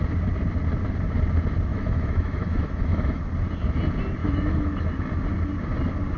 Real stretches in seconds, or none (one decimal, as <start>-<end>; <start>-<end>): 0.0-1.7; 3.2-4.2; 4.9-6.2